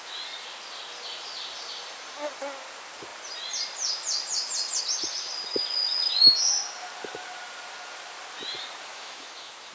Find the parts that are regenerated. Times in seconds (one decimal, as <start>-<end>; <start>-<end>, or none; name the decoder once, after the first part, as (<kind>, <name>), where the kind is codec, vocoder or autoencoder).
8.9-9.7 (autoencoder, DAC-VAE)

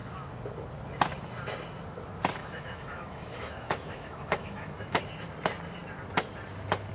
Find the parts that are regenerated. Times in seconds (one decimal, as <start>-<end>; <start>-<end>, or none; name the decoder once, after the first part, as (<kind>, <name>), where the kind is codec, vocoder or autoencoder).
2.4-5.0 (autoencoder, DAC-VAE)

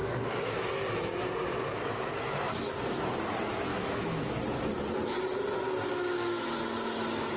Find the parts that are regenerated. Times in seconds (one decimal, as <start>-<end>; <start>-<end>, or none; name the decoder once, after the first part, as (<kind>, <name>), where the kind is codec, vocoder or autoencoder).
0.0-0.7 (autoencoder, DAC-VAE); 3.7-4.3; 5.9-6.5

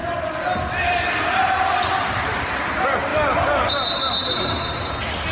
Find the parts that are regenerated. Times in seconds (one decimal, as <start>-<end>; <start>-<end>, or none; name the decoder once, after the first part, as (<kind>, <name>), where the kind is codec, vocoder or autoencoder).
none